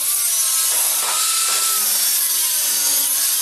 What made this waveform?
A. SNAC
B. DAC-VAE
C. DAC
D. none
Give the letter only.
D